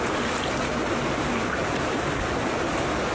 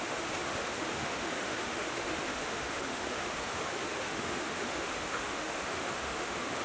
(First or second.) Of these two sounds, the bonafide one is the first